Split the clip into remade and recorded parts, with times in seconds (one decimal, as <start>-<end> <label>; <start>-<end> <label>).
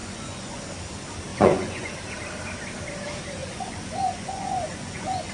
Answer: 0.0-0.6 remade; 0.6-1.3 recorded; 1.3-1.9 remade; 1.9-3.4 recorded; 3.4-5.3 remade